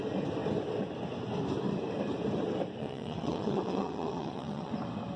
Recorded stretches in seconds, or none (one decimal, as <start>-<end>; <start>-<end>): 0.0-2.8; 4.7-5.2